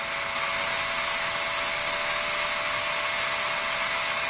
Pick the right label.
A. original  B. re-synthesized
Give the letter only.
A